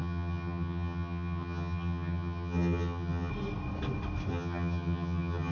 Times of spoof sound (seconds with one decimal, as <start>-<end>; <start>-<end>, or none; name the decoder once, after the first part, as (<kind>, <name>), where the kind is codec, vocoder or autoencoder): 0.0-3.3 (vocoder, HiFi-GAN); 4.3-5.5